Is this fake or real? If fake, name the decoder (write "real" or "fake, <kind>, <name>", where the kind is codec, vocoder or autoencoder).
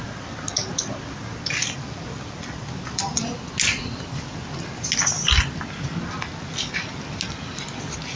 real